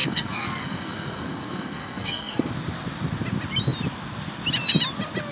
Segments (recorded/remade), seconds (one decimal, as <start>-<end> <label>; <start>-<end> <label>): 0.0-2.5 remade; 2.5-5.3 recorded